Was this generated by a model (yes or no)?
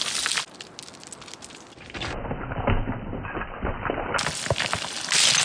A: no